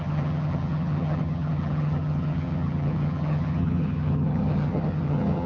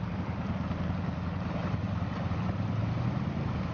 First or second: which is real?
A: second